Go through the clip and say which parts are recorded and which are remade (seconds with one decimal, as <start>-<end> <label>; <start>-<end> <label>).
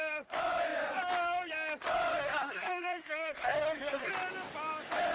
0.0-2.2 recorded; 2.2-4.1 remade; 4.1-5.1 recorded